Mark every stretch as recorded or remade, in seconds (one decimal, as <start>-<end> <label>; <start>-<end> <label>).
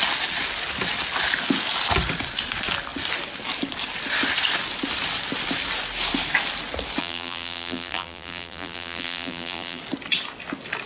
0.0-7.0 recorded; 7.0-9.8 remade; 9.8-10.9 recorded